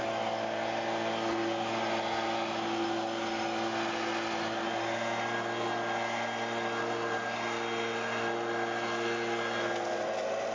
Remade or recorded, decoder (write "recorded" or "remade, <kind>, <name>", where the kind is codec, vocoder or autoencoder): recorded